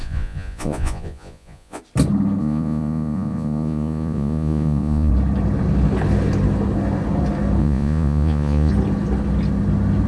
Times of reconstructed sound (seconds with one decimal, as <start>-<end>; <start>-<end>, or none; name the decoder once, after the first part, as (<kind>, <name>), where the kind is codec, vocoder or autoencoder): 0.0-1.8 (vocoder, Vocos); 2.4-5.1; 7.6-8.7